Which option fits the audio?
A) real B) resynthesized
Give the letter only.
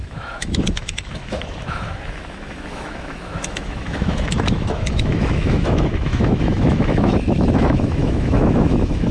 B